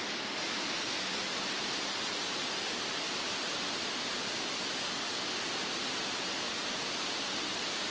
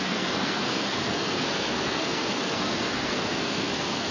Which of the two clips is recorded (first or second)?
first